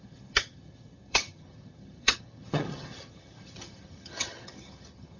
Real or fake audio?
fake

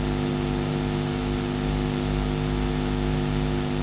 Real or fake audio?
real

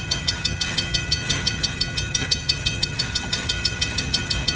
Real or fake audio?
fake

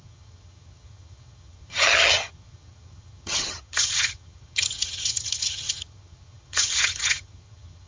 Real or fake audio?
fake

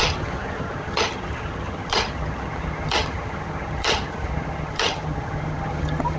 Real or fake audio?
fake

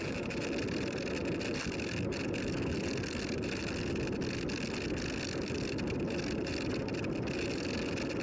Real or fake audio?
real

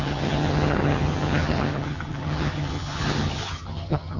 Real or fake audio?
fake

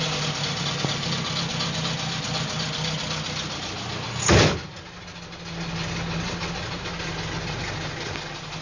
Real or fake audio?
real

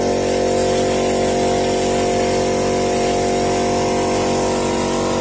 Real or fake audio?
real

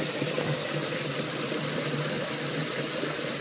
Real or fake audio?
real